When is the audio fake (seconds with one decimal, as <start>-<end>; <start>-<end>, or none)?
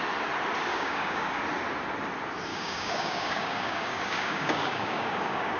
0.7-1.4; 2.5-5.6